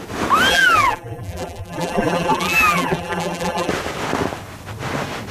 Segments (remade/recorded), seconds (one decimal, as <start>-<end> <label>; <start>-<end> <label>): 0.0-0.5 recorded; 0.5-3.7 remade; 3.7-5.3 recorded